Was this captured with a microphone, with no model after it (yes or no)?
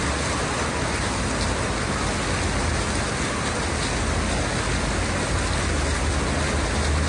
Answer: yes